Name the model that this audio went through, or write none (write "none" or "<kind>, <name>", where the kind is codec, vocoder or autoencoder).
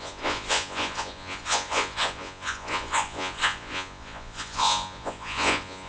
vocoder, Vocos